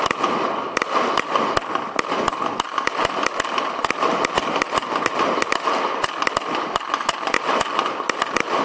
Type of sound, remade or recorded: recorded